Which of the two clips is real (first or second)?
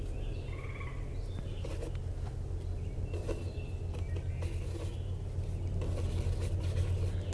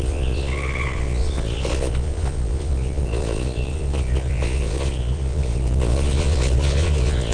first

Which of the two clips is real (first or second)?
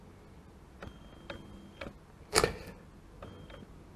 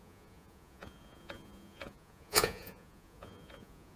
first